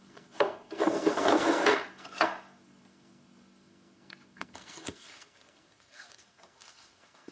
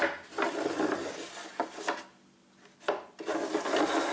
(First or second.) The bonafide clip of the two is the second